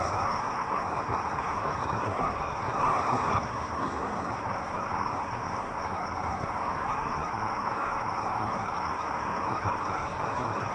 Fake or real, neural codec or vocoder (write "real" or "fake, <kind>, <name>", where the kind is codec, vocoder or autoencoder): fake, codec, SNAC